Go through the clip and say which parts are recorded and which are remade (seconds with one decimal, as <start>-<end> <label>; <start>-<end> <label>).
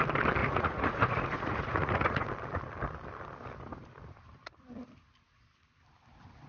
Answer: 0.0-0.4 recorded; 0.4-2.3 remade; 2.3-6.5 recorded